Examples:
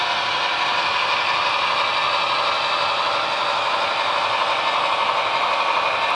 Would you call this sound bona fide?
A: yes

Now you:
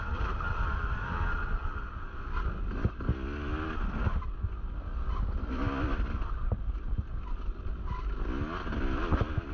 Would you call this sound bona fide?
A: yes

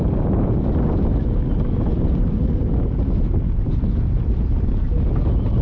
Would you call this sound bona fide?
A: yes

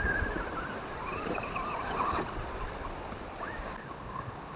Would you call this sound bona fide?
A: yes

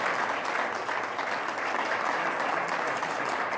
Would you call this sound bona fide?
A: yes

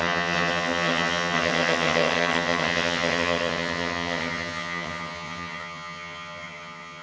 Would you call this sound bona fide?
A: no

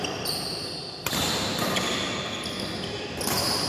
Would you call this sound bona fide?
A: yes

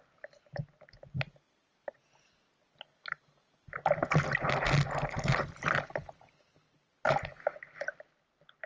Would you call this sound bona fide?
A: yes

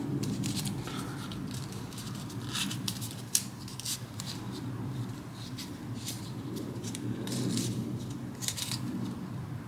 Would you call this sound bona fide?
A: no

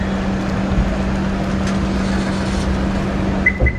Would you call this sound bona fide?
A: yes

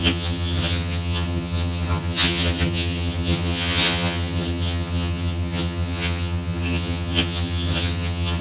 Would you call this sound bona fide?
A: no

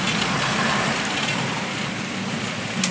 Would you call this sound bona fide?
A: yes